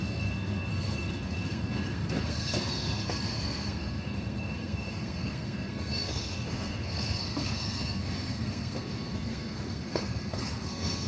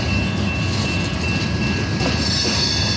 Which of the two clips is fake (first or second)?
first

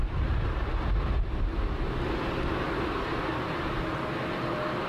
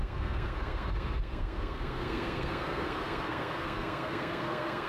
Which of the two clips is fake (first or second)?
second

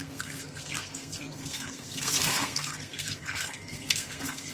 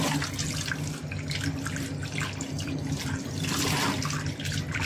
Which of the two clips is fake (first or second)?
first